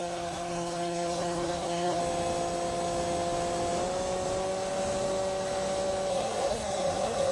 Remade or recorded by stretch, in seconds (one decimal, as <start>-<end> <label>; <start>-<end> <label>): 0.0-2.0 remade; 2.0-6.1 recorded; 6.1-7.3 remade

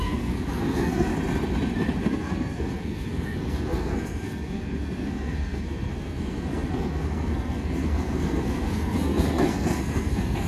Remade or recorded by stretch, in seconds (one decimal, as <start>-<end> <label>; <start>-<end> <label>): 0.0-1.1 remade; 1.1-2.0 recorded; 2.0-10.5 remade

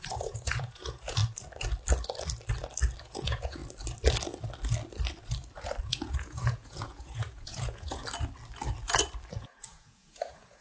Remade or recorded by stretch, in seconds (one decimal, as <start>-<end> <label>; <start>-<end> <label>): 0.0-1.2 remade; 1.2-3.0 recorded; 3.0-3.6 remade; 3.6-5.8 recorded; 5.8-8.0 remade; 8.0-9.3 recorded; 9.3-10.6 remade

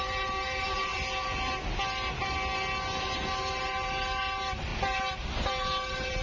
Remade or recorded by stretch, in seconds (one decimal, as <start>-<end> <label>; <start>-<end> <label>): 0.0-0.9 remade; 0.9-3.5 recorded; 3.5-4.7 remade; 4.7-5.4 recorded; 5.4-6.2 remade

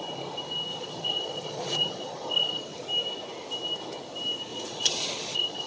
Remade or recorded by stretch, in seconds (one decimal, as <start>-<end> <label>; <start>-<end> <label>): 0.0-0.7 recorded; 0.7-2.6 remade; 2.6-4.5 recorded; 4.5-5.7 remade

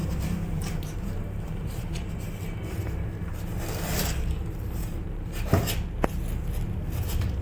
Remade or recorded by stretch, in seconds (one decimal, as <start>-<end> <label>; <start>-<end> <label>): 0.0-2.1 remade; 2.1-4.8 recorded; 4.8-5.4 remade; 5.4-7.4 recorded